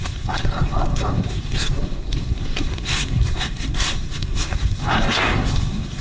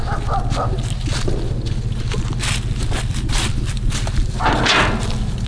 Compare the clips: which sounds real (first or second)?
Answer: second